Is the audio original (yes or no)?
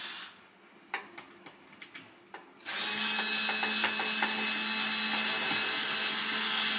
yes